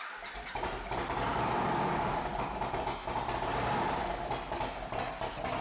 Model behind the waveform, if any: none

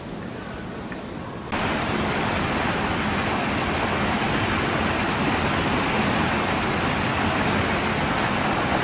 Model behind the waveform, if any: none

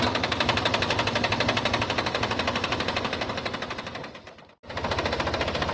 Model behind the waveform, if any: none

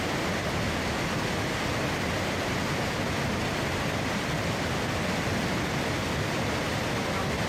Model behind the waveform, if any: none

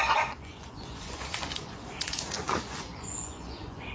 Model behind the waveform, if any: vocoder, Vocos